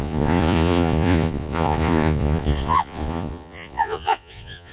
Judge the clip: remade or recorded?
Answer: remade